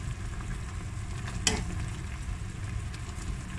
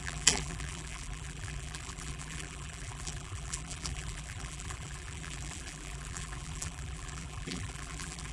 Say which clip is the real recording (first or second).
first